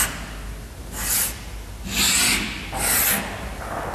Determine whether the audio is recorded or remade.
recorded